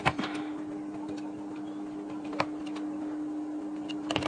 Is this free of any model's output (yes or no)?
yes